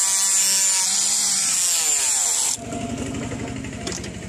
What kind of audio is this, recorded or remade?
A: recorded